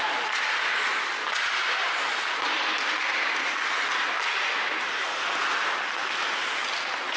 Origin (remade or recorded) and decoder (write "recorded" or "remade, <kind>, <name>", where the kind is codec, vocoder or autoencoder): recorded